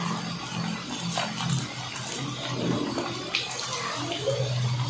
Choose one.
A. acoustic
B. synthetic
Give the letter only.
A